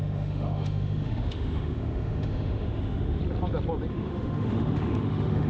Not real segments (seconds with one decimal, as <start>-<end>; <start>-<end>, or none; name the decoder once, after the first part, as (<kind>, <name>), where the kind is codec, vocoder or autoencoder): 0.0-3.2 (autoencoder, DAC-VAE); 3.9-5.5